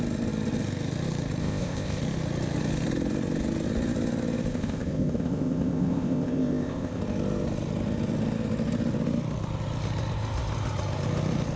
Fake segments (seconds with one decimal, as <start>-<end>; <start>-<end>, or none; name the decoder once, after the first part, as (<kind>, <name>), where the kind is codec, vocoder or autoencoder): 1.4-2.0 (codec, ZipCodec); 4.5-7.0